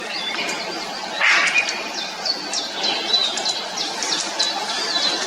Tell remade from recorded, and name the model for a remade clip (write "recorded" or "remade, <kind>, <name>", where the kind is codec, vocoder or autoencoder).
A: recorded